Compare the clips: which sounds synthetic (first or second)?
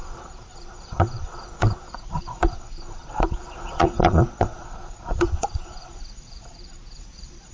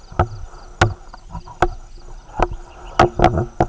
first